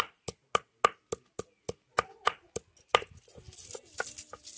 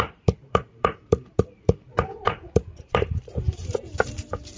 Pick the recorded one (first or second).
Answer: first